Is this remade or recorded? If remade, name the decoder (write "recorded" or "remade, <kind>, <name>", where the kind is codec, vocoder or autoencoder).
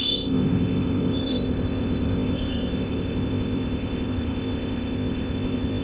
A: remade, codec, ZipCodec